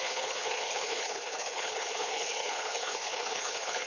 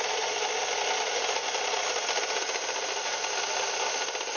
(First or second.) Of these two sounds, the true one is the second